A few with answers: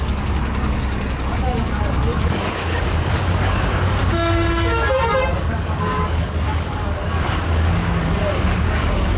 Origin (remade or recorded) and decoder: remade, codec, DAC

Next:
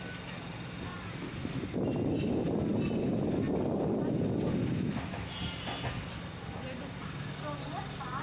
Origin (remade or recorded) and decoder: recorded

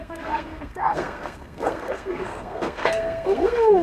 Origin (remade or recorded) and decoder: remade, codec, SNAC